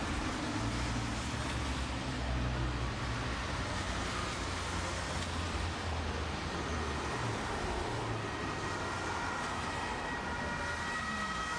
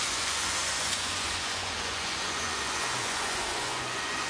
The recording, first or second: first